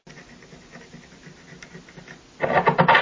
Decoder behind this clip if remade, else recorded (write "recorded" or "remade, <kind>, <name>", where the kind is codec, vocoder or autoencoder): recorded